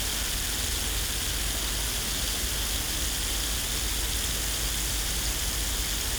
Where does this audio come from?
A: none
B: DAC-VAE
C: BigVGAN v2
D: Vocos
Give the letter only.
A